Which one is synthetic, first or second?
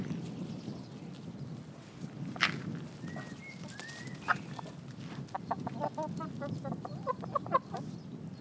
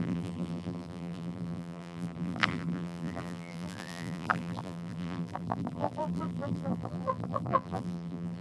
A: second